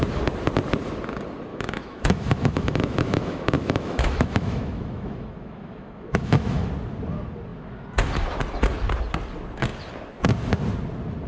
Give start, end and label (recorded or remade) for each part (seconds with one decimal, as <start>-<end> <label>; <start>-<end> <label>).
0.0-1.5 recorded; 1.5-6.7 remade; 6.7-11.3 recorded